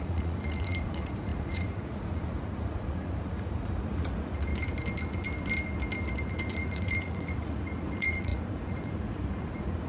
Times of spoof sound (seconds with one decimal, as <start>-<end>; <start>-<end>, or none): 0.0-4.5; 6.3-9.9